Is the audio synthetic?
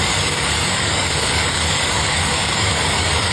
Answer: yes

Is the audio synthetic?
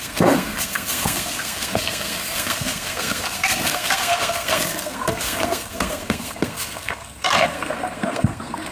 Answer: yes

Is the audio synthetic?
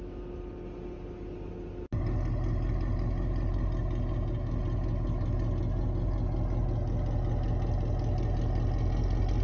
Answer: no